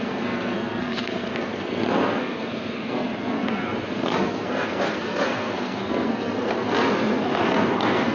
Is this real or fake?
fake